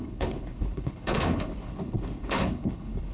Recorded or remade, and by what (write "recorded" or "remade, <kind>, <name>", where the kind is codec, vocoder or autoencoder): remade, codec, HILCodec